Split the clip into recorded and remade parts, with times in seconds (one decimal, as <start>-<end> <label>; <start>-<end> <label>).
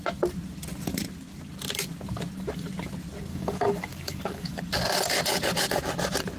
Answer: 0.0-3.3 recorded; 3.3-4.6 remade; 4.6-6.4 recorded